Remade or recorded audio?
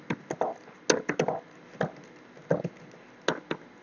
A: recorded